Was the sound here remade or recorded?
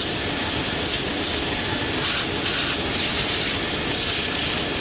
remade